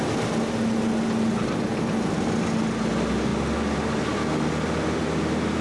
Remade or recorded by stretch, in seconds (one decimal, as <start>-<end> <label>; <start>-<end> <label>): 0.0-5.6 recorded